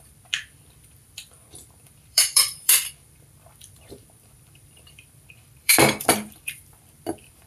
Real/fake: fake